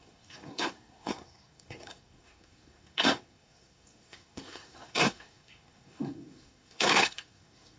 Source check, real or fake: fake